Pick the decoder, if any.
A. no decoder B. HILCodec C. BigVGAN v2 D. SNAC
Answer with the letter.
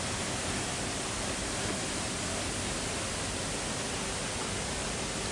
A